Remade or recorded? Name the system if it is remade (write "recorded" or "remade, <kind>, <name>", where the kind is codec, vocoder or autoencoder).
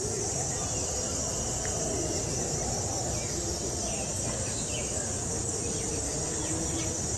recorded